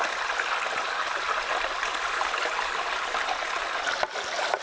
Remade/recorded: recorded